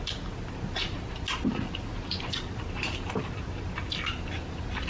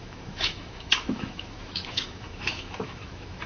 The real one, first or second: first